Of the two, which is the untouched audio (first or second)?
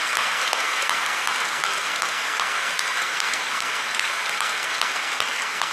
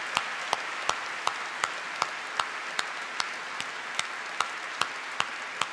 second